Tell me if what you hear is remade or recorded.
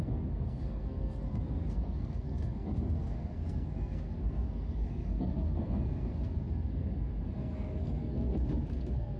remade